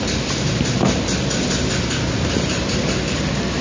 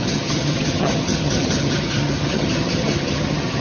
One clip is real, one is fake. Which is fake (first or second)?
second